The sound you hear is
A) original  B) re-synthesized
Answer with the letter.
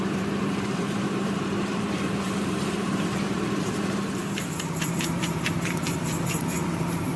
B